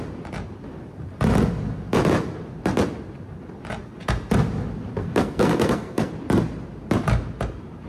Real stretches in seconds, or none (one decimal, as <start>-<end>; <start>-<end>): 0.0-5.0; 6.1-7.9